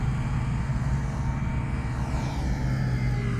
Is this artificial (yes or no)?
no